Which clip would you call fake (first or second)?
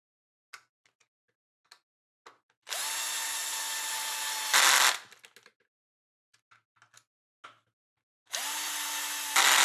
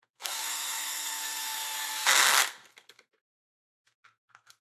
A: second